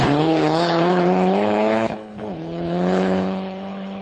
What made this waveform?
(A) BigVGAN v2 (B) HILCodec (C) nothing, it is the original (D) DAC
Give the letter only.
B